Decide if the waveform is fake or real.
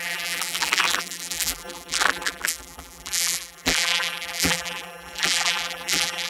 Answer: fake